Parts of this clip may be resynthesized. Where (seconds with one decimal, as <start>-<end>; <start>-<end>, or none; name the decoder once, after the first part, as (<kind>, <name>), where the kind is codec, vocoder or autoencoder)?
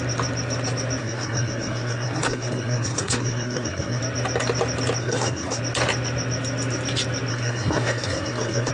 1.0-4.0 (codec, SNAC); 5.0-5.6; 7.3-8.7